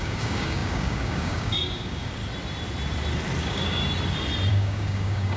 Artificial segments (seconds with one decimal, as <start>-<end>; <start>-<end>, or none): 0.0-2.2; 3.4-3.8; 4.5-5.4